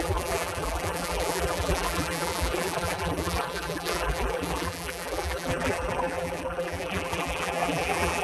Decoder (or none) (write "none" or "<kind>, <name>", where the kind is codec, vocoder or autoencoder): vocoder, BigVGAN v2